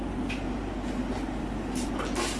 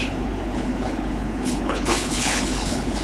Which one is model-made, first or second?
second